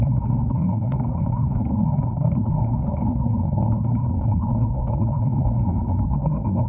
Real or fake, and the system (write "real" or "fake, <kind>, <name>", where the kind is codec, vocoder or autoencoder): fake, codec, SNAC